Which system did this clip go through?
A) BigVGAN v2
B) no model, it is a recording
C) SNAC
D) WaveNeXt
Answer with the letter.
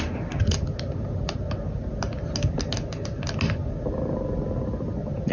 B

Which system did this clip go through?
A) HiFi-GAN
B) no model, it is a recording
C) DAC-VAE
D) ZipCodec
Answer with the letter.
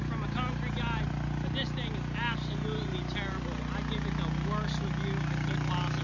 B